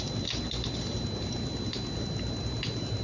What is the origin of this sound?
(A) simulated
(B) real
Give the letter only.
B